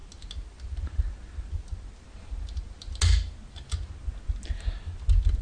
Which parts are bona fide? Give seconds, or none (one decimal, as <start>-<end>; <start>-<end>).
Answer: 0.0-5.4